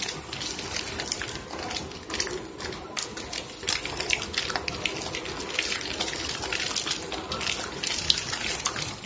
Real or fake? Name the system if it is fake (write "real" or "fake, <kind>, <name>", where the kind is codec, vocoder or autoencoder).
real